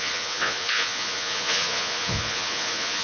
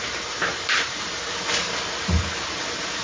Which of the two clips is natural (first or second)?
second